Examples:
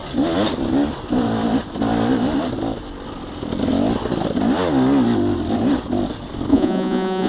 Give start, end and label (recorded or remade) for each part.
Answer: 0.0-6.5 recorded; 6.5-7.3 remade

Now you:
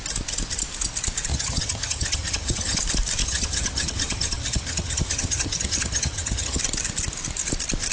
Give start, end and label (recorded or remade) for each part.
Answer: 0.0-1.3 recorded; 1.3-2.8 remade; 2.8-3.2 recorded; 3.2-6.6 remade; 6.6-7.9 recorded

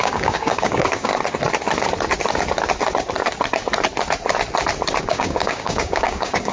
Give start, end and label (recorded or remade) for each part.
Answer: 0.0-1.1 remade; 1.1-5.0 recorded; 5.0-6.5 remade

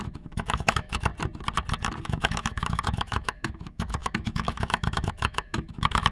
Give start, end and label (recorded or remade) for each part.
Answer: 0.0-1.1 remade; 1.1-2.0 recorded; 2.0-6.1 remade

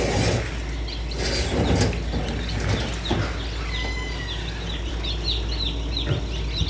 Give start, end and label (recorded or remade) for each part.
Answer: 0.0-6.7 recorded